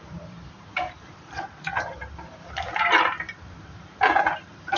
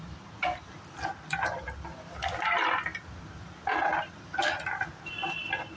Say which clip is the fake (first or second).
first